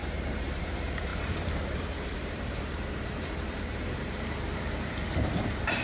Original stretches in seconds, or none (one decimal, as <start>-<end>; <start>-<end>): none